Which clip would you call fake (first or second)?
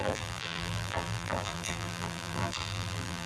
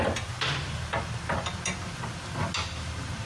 first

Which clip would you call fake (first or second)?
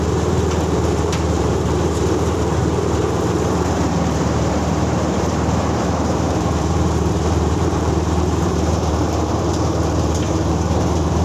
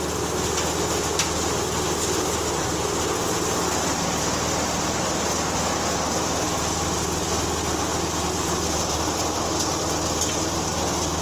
first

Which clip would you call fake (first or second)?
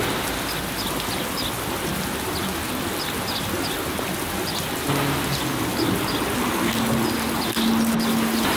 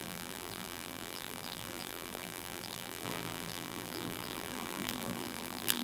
second